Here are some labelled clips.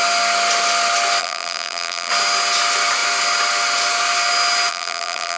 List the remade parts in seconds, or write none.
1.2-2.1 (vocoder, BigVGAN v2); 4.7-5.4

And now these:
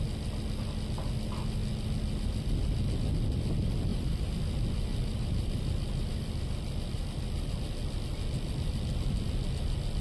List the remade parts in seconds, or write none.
3.9-4.4 (vocoder, BigVGAN v2); 4.9-7.5